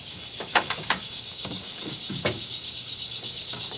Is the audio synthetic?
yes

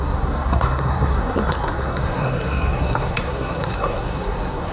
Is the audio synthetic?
yes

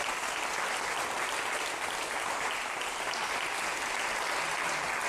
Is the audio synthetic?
no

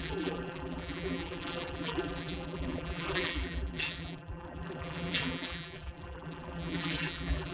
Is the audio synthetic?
yes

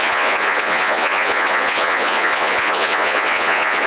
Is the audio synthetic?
yes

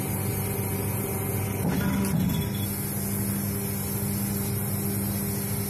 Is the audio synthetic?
no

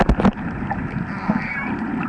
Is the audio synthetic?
no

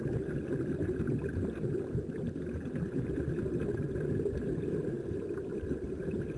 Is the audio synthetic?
no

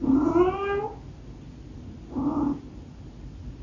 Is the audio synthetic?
no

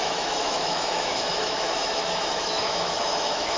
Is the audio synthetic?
yes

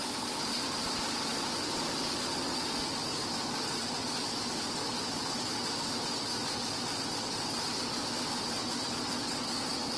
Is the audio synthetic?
no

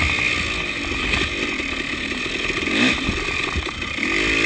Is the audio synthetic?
no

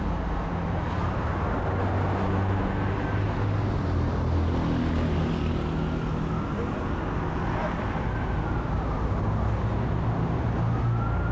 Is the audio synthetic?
no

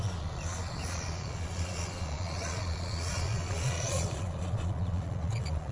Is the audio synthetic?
yes